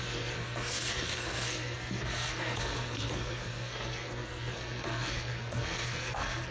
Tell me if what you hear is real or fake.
fake